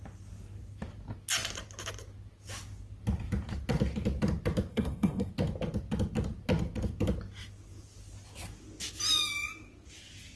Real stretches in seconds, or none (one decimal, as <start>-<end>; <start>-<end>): 0.0-4.7; 5.3-10.4